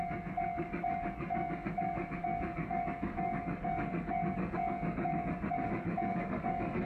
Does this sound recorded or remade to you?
remade